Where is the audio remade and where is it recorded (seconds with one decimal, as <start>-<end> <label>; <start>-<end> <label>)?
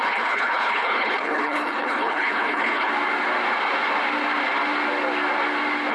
0.0-2.9 remade; 2.9-5.9 recorded